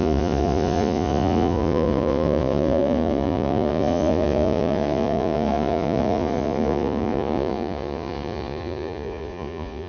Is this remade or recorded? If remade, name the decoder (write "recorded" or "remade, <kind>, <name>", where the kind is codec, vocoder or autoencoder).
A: remade, vocoder, Vocos